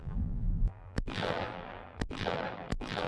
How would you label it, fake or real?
fake